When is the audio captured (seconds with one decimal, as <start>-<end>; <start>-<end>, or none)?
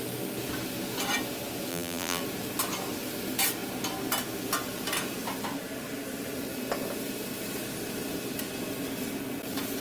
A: 0.0-1.7; 2.2-9.8